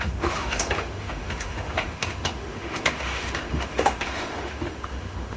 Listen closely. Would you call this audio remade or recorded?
remade